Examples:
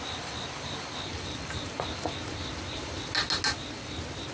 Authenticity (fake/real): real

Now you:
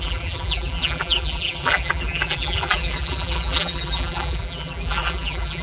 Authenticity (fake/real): fake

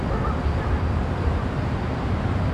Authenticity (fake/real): real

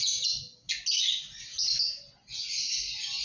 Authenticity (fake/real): real